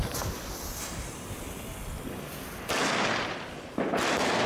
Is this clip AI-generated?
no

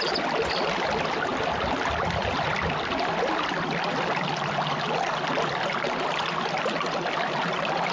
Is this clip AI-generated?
no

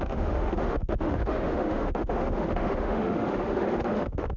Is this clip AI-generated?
yes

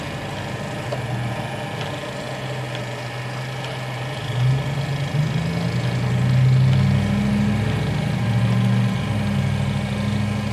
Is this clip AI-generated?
no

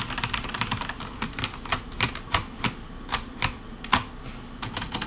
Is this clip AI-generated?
no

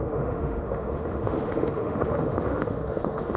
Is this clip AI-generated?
yes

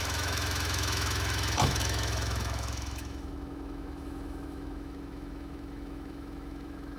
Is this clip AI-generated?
yes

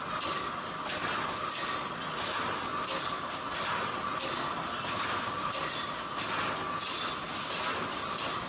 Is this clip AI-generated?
no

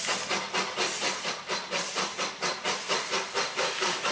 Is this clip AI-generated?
no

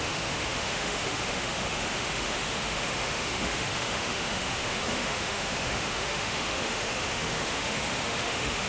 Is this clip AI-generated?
yes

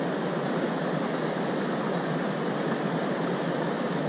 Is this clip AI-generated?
no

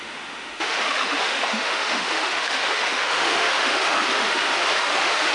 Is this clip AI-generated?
yes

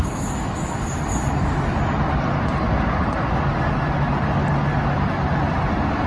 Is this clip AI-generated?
no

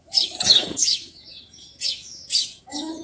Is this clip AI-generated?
yes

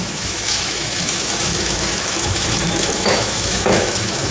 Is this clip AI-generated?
yes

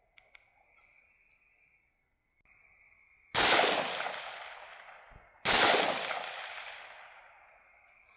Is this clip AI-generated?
no